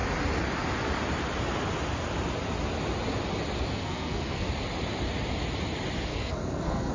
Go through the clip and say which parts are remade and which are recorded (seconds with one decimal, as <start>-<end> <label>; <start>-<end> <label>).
0.0-3.8 recorded; 3.8-4.5 remade; 4.5-6.1 recorded; 6.1-6.9 remade